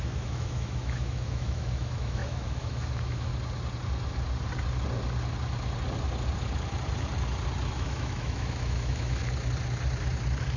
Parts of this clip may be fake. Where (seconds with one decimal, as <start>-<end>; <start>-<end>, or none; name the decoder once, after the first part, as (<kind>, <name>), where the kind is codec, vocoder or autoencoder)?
0.0-3.3 (autoencoder, DAC-VAE); 7.7-9.2